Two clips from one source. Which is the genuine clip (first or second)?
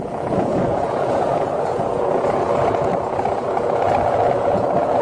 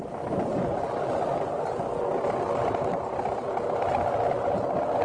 second